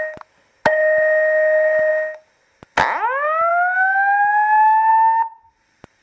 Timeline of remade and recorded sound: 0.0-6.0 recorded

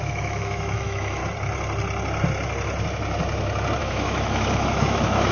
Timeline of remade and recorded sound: 0.0-1.2 remade; 1.2-3.8 recorded; 3.8-5.3 remade

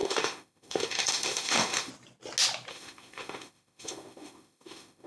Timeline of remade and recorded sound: 0.0-1.9 remade; 1.9-2.7 recorded; 2.7-5.1 remade